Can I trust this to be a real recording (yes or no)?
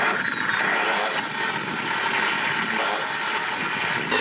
yes